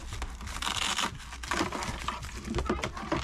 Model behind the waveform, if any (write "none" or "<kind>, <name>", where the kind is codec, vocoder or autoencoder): none